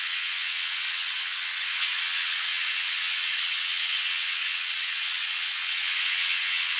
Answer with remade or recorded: remade